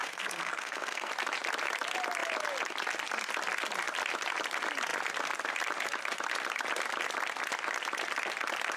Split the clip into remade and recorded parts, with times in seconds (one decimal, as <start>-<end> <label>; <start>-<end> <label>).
0.0-1.1 remade; 1.1-8.8 recorded